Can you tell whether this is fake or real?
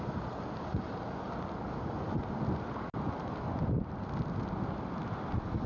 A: real